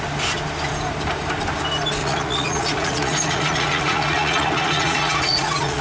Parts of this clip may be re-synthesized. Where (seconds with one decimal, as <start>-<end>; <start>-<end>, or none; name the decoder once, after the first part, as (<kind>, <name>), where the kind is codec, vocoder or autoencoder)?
2.0-5.8 (vocoder, Vocos)